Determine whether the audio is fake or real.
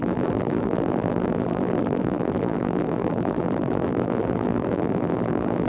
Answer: fake